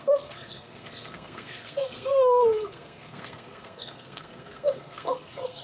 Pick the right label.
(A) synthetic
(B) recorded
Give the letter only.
A